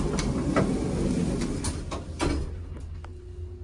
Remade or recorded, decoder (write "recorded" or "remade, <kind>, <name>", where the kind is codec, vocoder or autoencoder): recorded